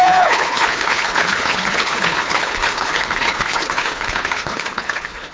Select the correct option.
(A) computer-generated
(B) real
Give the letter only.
A